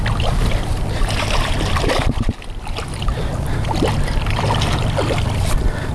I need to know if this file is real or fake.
fake